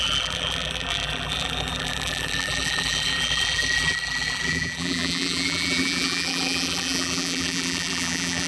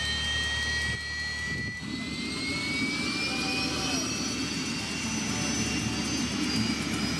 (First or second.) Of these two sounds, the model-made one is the first